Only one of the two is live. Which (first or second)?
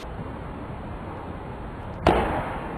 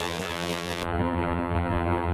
first